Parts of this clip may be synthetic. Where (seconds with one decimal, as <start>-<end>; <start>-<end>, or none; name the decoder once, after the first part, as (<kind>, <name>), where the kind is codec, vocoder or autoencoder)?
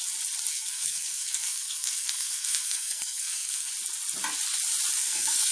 0.5-3.7 (codec, SNAC); 5.0-5.5